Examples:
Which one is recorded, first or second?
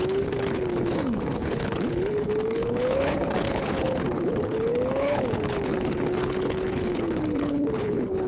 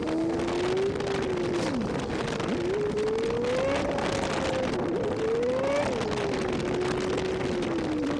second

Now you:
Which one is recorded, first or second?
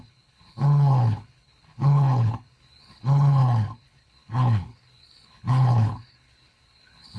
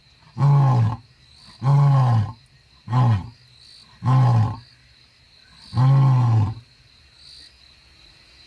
second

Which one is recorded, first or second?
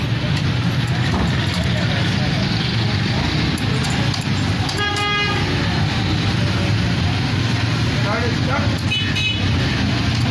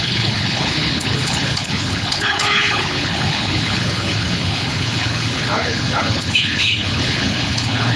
first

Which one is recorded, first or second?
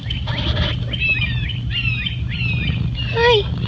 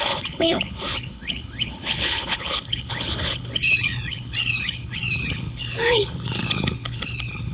first